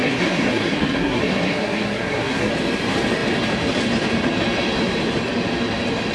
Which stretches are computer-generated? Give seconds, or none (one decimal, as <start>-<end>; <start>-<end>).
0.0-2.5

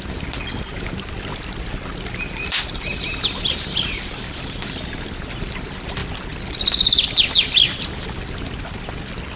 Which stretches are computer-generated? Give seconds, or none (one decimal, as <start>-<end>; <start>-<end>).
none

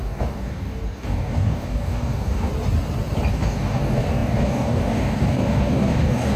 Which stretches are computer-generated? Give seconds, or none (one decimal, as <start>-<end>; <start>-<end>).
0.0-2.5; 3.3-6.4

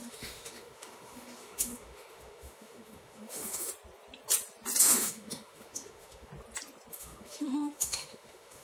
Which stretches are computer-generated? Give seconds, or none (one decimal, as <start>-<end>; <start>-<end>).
0.0-3.7; 4.8-6.3; 6.9-8.6

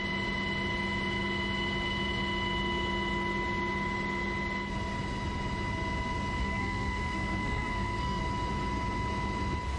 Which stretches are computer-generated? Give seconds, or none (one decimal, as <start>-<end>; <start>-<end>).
6.4-8.2

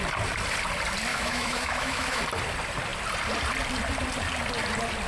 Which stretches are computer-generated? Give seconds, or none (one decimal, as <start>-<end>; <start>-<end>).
1.1-2.2